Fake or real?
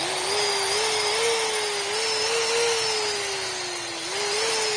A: real